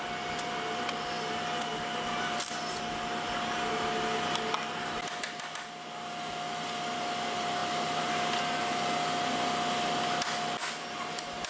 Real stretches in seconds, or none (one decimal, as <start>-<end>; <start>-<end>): 0.0-11.5